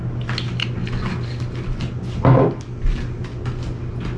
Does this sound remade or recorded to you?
recorded